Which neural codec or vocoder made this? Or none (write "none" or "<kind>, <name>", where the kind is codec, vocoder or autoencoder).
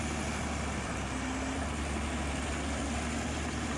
none